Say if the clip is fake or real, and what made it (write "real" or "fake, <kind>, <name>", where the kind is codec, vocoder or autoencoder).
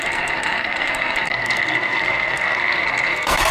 fake, codec, SNAC